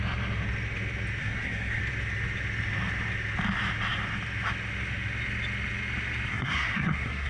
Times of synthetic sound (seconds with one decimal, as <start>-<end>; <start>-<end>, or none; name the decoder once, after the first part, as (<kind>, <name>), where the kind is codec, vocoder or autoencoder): 1.2-1.8 (codec, SNAC); 6.3-7.3